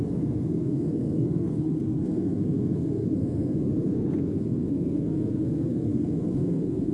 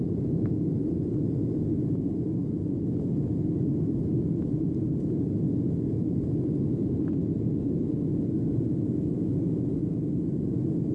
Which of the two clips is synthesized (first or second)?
first